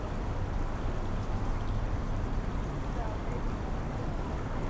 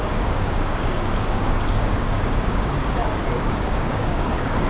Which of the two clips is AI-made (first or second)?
second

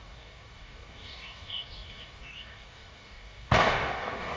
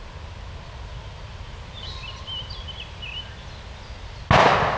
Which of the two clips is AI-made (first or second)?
first